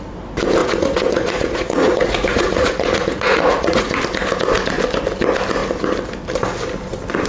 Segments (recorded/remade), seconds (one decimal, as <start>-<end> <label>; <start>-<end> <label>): 0.0-0.6 recorded; 0.6-4.0 remade; 4.0-7.3 recorded